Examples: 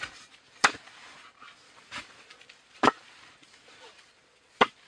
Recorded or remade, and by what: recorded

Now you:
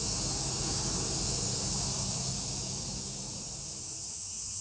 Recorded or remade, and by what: remade, autoencoder, DAC-VAE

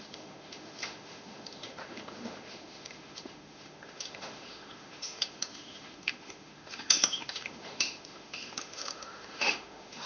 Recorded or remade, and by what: remade, autoencoder, DAC-VAE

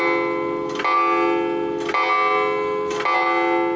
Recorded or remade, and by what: recorded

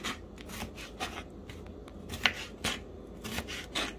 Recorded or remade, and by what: recorded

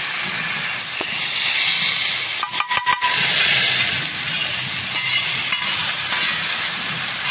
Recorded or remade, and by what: recorded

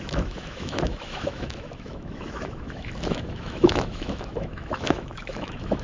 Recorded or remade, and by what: remade, autoencoder, DAC-VAE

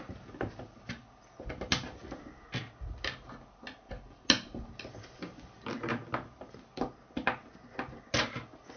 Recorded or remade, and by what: recorded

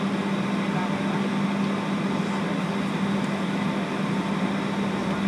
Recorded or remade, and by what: recorded